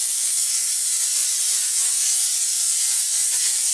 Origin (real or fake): real